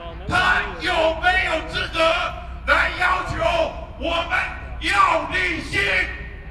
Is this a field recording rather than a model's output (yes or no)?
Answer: yes